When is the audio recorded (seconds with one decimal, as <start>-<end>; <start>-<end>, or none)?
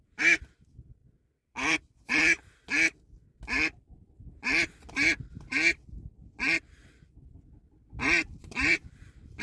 2.2-6.6